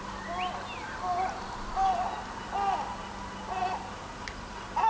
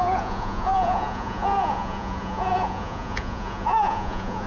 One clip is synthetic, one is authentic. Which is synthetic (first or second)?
second